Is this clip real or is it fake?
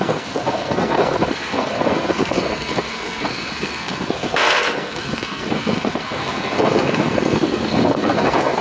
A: fake